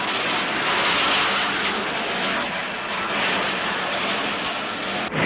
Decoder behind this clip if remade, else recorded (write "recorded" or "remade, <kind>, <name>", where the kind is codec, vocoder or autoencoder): recorded